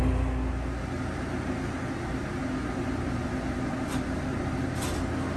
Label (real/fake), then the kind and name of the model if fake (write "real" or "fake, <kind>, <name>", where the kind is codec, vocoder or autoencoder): real